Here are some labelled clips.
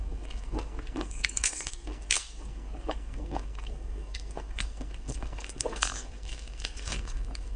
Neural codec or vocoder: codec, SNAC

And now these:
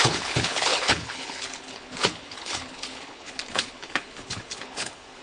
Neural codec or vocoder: codec, HILCodec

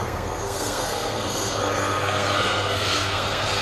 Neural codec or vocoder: codec, SNAC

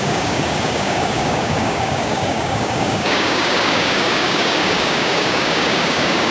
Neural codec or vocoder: codec, DAC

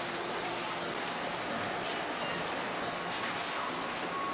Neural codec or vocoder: none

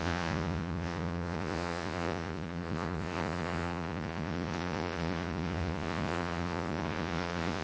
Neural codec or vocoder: vocoder, Vocos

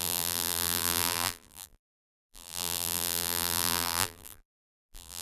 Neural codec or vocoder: vocoder, BigVGAN v2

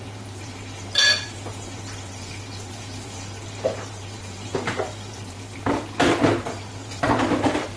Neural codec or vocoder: vocoder, BigVGAN v2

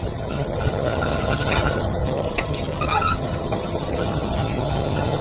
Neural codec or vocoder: vocoder, HiFi-GAN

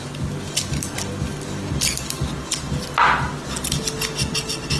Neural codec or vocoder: none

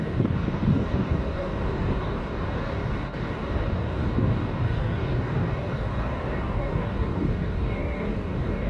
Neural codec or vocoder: codec, DAC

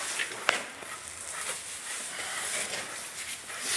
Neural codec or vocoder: none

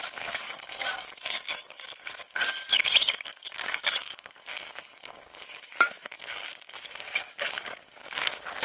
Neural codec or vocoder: codec, DAC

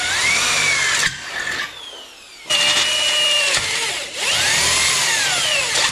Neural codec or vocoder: vocoder, BigVGAN v2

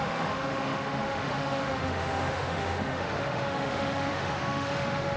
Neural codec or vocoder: autoencoder, DAC-VAE